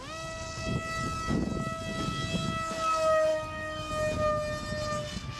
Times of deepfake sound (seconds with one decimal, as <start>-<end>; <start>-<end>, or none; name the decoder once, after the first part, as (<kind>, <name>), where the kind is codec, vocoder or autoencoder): 3.3-3.9 (autoencoder, DAC-VAE)